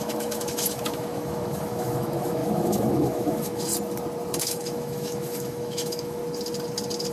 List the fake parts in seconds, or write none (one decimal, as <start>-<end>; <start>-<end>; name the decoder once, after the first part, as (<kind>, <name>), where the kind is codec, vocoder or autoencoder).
0.0-3.7 (autoencoder, DAC-VAE); 4.4-6.2